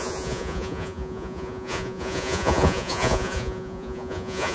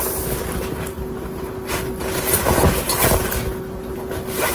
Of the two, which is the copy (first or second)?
first